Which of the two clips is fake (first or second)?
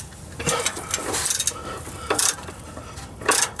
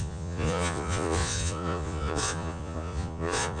second